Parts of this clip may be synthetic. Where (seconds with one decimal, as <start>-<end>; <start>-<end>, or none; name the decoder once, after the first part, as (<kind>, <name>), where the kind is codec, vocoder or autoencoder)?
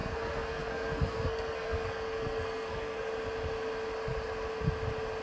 0.0-3.1 (codec, SNAC)